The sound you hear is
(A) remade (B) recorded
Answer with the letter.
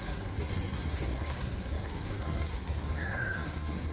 A